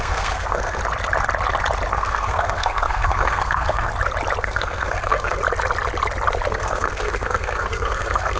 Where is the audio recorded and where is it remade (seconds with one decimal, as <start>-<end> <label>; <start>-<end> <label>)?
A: 0.0-0.8 remade; 0.8-1.9 recorded; 1.9-3.9 remade; 3.9-4.4 recorded; 4.4-5.4 remade; 5.4-6.5 recorded; 6.5-8.4 remade